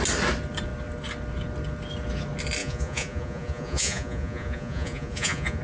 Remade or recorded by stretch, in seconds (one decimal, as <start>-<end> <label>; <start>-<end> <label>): 0.0-2.6 recorded; 2.6-5.6 remade